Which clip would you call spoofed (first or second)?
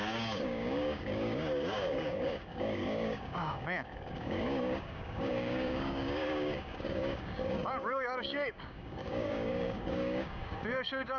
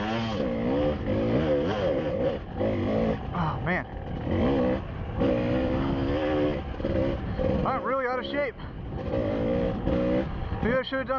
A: first